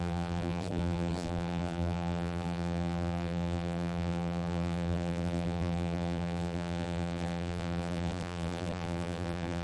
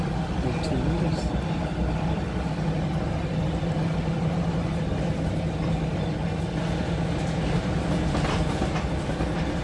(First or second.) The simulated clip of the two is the first